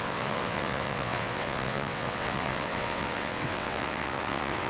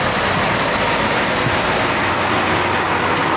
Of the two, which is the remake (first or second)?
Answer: first